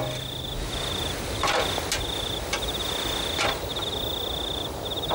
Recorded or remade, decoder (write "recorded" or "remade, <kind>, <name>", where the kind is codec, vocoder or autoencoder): recorded